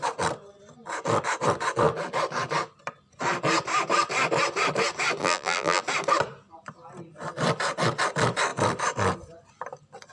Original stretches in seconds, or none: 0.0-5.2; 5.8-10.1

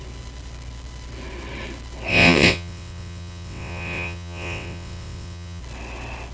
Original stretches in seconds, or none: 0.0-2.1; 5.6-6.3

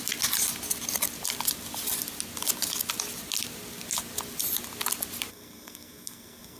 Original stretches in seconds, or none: 0.0-5.3